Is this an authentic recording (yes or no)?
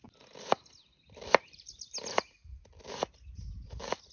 yes